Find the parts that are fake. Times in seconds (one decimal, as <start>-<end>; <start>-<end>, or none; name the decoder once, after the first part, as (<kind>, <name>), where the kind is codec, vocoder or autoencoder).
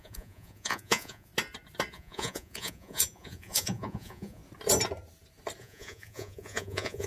0.0-1.3 (vocoder, Vocos); 1.9-4.4; 5.6-7.1